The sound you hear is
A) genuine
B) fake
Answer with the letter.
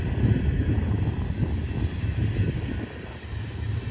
A